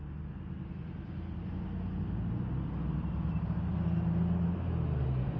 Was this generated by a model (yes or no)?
no